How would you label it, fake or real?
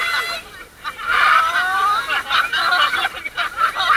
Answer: fake